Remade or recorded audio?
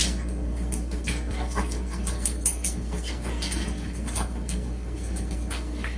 remade